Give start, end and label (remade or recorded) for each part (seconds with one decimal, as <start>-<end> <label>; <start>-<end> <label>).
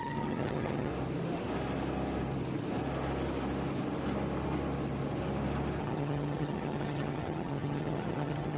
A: 0.0-0.9 remade; 0.9-5.8 recorded; 5.8-8.6 remade